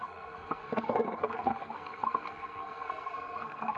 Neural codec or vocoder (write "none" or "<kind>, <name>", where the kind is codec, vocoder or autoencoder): codec, SNAC